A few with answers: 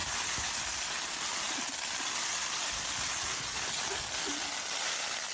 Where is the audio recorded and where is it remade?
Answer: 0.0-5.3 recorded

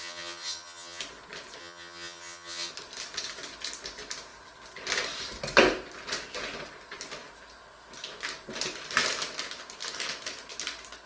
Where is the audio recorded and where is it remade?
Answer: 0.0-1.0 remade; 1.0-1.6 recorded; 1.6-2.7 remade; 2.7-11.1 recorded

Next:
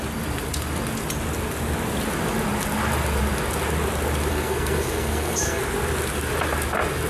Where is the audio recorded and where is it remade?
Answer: 0.0-4.3 recorded; 4.3-5.6 remade; 5.6-7.1 recorded

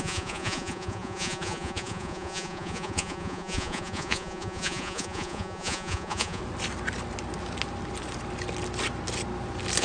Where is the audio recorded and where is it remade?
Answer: 0.0-6.4 remade; 6.4-9.8 recorded

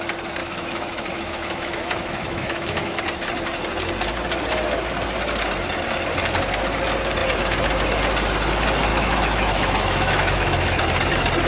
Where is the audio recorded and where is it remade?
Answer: 0.0-0.4 recorded; 0.4-3.0 remade; 3.0-8.9 recorded; 8.9-10.8 remade; 10.8-11.5 recorded